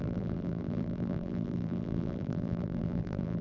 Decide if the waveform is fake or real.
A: fake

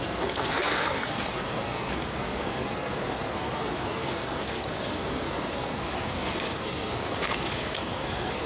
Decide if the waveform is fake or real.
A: fake